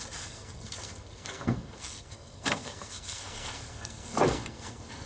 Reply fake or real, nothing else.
fake